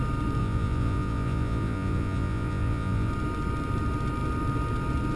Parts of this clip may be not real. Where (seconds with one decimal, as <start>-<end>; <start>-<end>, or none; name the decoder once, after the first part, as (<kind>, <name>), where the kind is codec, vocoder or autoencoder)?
0.4-3.1 (vocoder, Vocos)